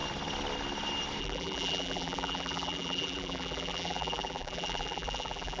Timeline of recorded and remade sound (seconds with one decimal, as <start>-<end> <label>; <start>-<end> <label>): 0.0-1.2 recorded; 1.2-5.6 remade